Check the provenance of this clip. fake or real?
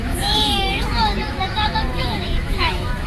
fake